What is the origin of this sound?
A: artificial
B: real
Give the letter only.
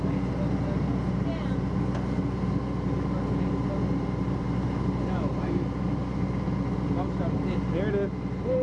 B